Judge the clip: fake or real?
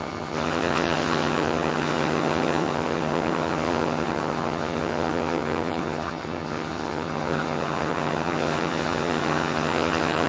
fake